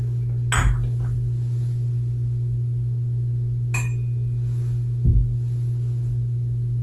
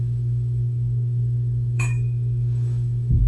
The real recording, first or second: first